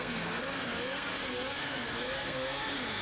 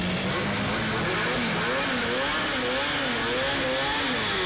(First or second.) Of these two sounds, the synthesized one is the first